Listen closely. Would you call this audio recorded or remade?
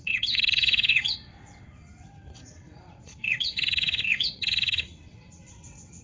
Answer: remade